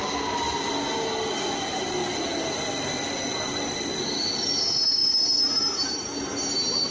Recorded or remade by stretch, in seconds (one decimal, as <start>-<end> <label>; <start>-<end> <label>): 0.0-2.0 recorded; 2.0-2.7 remade; 2.7-5.0 recorded; 5.0-6.2 remade; 6.2-6.9 recorded